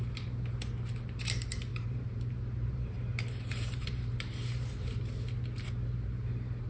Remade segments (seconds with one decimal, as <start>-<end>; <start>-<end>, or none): 1.7-5.0